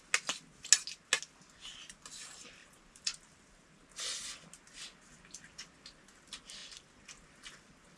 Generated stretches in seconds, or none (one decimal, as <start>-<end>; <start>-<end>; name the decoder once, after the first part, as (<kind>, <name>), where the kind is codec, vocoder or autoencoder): 2.6-3.9 (vocoder, BigVGAN v2)